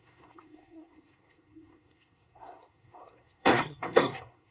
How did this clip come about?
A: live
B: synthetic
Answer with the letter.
B